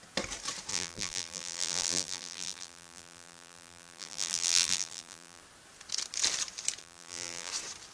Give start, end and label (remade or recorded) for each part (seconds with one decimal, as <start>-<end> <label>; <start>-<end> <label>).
0.0-0.7 recorded; 0.7-5.4 remade; 5.4-6.8 recorded; 6.8-7.5 remade; 7.5-7.9 recorded